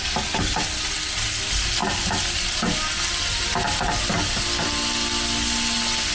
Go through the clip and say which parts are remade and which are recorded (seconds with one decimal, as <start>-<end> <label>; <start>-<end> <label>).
0.0-6.1 recorded